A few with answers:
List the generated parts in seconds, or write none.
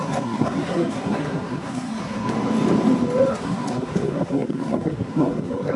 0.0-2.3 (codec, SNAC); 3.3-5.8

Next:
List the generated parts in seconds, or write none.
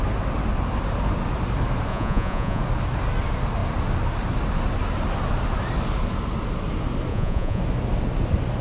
1.9-2.6 (vocoder, Vocos); 7.1-7.6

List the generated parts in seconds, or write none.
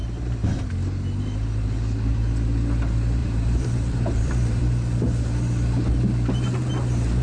3.2-4.6 (vocoder, BigVGAN v2)